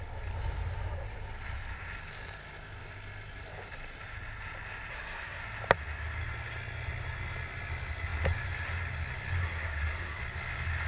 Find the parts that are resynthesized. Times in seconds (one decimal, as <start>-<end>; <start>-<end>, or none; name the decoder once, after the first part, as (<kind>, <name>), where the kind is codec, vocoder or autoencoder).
4.9-5.4 (codec, SNAC); 9.4-10.2